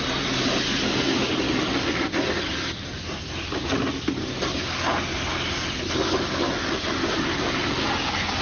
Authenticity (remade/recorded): recorded